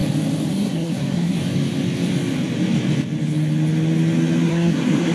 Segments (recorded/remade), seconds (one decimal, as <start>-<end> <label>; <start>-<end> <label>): 0.0-0.5 recorded; 0.5-1.4 remade; 1.4-4.5 recorded; 4.5-5.1 remade